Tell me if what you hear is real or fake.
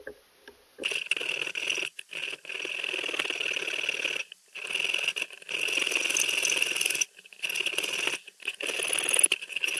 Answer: real